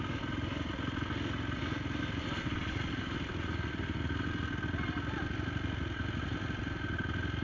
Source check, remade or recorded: remade